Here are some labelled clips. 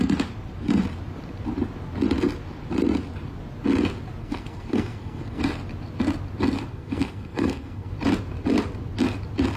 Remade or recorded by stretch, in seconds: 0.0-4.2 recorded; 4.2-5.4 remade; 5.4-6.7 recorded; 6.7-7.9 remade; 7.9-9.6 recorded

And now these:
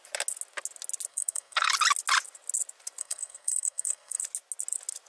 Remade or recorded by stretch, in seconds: 0.0-1.1 recorded; 1.1-1.7 remade; 1.7-3.0 recorded; 3.0-4.2 remade; 4.2-5.1 recorded

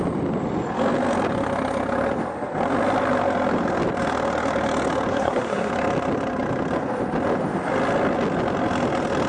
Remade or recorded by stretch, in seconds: 0.0-5.1 recorded; 5.1-5.7 remade; 5.7-9.3 recorded

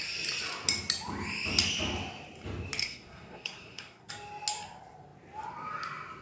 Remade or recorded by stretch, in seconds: 0.0-2.8 recorded; 2.8-4.1 remade; 4.1-6.2 recorded

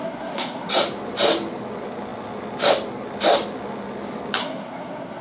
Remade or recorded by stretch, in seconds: 0.0-0.7 remade; 0.7-4.4 recorded; 4.4-5.2 remade

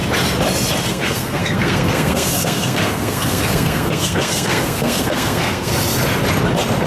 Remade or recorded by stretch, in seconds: 0.0-0.9 recorded; 0.9-5.7 remade; 5.7-6.9 recorded